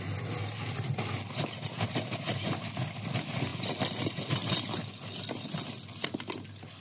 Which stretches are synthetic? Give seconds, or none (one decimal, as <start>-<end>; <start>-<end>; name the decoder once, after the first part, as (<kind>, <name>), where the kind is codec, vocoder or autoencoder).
none